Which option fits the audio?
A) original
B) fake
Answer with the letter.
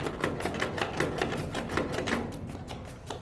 A